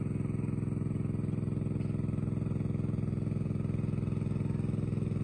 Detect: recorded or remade recorded